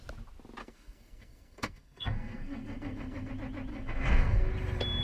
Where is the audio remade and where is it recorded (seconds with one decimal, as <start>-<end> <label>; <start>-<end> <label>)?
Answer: 0.0-0.6 recorded; 0.6-3.3 remade; 3.3-3.7 recorded; 3.7-4.5 remade; 4.5-5.0 recorded